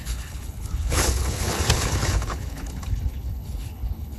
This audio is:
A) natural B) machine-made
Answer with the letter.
B